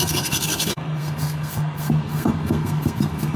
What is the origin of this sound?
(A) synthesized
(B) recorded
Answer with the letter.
A